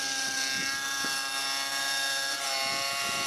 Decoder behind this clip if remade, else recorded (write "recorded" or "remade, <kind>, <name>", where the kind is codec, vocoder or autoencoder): recorded